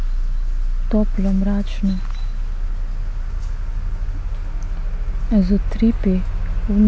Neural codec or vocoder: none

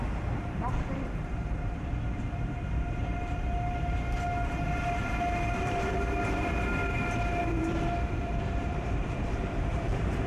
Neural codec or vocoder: vocoder, BigVGAN v2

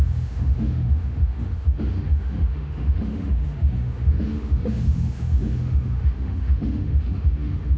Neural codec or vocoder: autoencoder, DAC-VAE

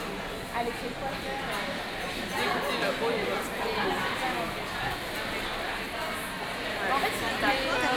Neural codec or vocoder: none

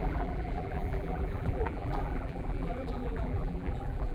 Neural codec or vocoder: vocoder, BigVGAN v2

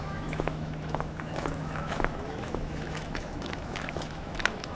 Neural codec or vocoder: autoencoder, DAC-VAE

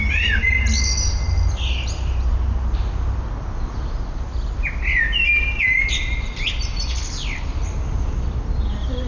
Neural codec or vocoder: none